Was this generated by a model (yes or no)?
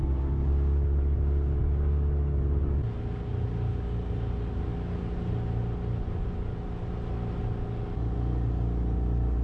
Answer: no